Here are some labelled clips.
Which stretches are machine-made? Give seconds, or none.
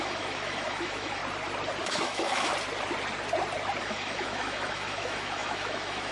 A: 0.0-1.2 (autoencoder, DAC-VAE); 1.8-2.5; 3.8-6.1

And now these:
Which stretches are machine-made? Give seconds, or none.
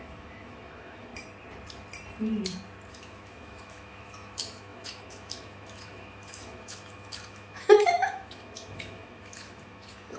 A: 0.0-1.1 (autoencoder, DAC-VAE); 2.9-10.2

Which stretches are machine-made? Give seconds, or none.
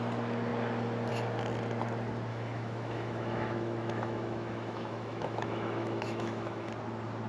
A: 2.3-6.7 (autoencoder, DAC-VAE)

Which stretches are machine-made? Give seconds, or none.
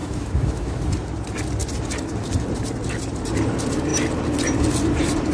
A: 0.0-0.8 (autoencoder, DAC-VAE)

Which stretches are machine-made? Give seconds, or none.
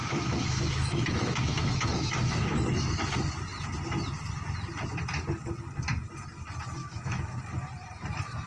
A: 0.0-3.1 (autoencoder, DAC-VAE); 6.8-7.4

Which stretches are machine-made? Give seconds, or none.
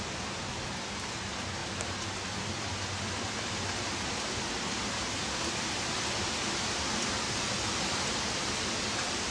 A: none